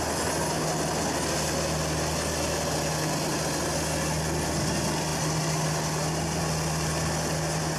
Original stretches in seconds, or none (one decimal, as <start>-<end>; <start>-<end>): 0.0-7.8

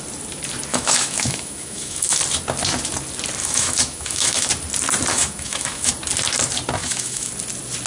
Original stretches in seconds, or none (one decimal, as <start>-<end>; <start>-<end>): 0.0-0.7; 2.2-3.4; 4.5-5.1; 5.9-6.8; 7.3-7.9